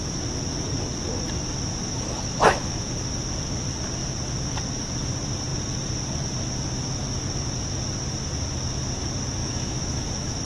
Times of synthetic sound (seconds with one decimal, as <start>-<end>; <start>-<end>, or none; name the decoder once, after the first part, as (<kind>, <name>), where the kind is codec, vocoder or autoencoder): 9.4-10.4 (autoencoder, DAC-VAE)